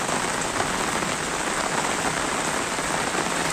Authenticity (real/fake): real